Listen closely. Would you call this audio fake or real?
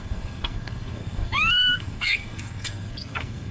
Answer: fake